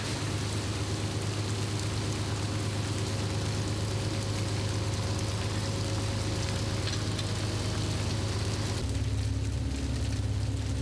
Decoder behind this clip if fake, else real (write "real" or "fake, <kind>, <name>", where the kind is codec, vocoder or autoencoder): real